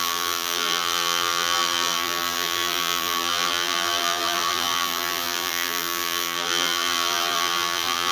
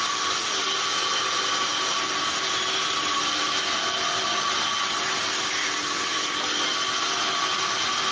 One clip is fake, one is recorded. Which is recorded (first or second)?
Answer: second